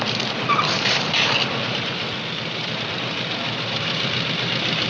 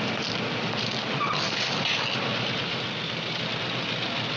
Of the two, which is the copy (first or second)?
first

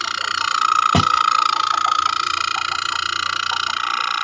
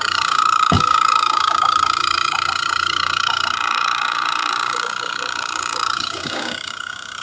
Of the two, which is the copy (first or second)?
second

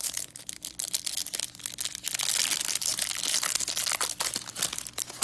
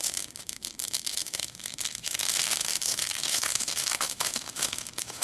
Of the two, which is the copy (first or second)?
second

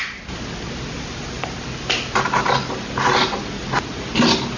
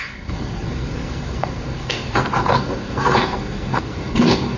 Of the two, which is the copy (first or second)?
second